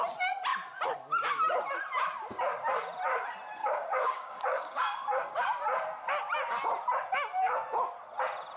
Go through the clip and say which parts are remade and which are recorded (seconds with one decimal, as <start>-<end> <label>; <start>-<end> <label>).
0.0-3.6 recorded; 3.6-5.3 remade; 5.3-8.6 recorded